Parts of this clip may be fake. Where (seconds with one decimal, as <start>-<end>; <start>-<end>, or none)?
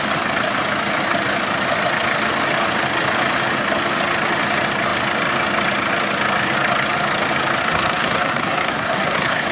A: 7.6-9.5